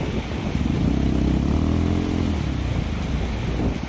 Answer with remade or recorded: recorded